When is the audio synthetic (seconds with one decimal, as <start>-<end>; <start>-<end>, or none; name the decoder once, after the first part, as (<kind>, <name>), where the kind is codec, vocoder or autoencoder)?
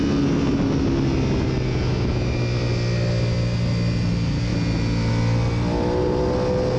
none